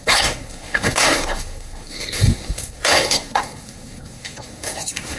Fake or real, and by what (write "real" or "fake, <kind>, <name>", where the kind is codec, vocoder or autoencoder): fake, codec, SNAC